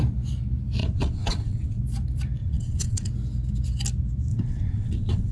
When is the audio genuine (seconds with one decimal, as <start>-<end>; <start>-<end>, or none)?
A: 0.0-0.8; 1.8-2.4; 3.1-4.3